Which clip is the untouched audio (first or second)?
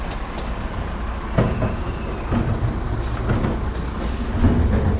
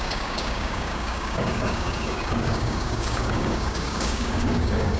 first